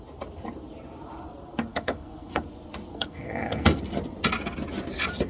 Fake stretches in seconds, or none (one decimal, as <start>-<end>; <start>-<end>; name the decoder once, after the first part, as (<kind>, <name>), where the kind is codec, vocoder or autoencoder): 1.7-2.4 (codec, SNAC); 2.9-3.8